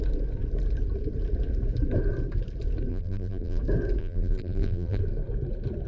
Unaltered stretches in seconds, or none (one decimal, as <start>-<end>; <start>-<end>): 0.0-2.9; 3.6-4.0; 5.0-5.9